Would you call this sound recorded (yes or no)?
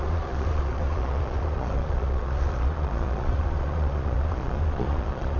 no